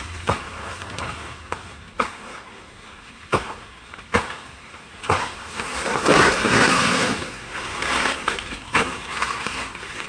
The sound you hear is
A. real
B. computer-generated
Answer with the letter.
B